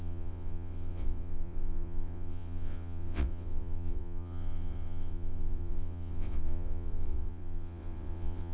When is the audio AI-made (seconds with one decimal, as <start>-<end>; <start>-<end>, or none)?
0.0-8.5